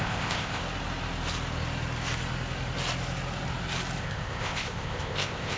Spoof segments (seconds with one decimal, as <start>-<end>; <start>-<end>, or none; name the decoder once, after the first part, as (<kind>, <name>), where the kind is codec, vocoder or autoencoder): 0.0-0.6 (codec, ZipCodec); 4.0-5.6